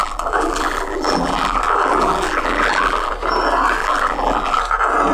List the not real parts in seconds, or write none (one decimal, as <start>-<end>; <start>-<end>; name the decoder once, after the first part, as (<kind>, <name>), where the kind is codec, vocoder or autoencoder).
0.0-3.1 (vocoder, BigVGAN v2); 3.8-4.6